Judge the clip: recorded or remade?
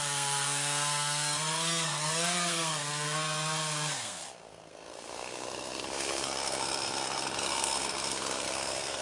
remade